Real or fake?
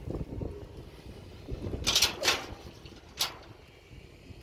real